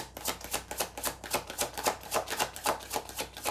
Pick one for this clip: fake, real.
real